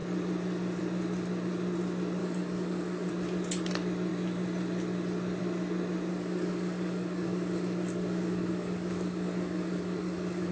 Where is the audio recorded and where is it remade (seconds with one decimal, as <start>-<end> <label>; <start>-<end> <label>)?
0.0-2.2 recorded; 2.2-3.1 remade; 3.1-6.1 recorded; 6.1-10.5 remade